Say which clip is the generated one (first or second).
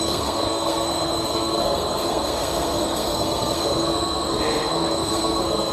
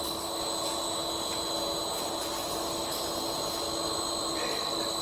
first